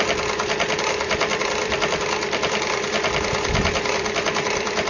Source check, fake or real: fake